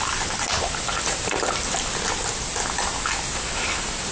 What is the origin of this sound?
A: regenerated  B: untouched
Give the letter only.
B